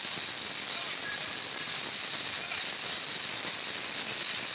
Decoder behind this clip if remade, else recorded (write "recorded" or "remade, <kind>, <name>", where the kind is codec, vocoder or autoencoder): recorded